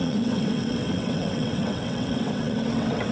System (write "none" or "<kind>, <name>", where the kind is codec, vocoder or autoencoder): vocoder, WaveNeXt